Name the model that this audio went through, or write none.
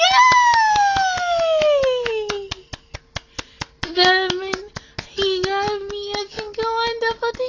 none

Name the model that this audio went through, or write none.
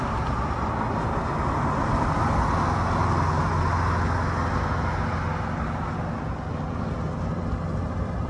none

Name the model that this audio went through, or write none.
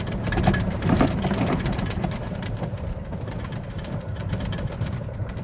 vocoder, BigVGAN v2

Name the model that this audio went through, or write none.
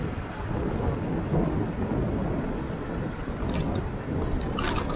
none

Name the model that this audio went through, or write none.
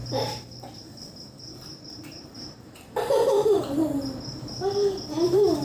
vocoder, BigVGAN v2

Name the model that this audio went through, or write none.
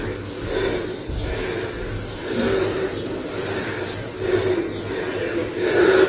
none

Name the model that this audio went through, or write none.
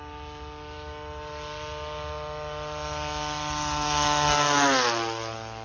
none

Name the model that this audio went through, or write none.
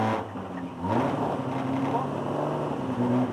none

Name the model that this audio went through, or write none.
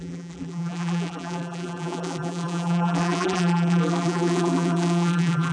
vocoder, BigVGAN v2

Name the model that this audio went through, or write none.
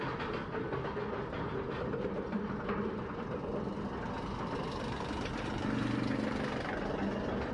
none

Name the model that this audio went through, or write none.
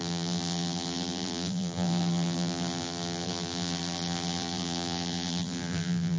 vocoder, BigVGAN v2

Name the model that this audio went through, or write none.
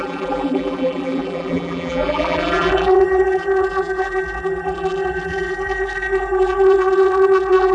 vocoder, BigVGAN v2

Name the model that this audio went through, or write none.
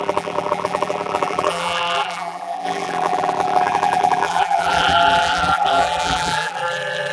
vocoder, BigVGAN v2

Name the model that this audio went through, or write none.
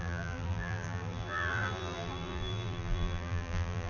vocoder, BigVGAN v2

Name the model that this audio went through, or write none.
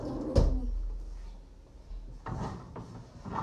none